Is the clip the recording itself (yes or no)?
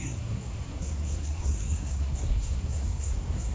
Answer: no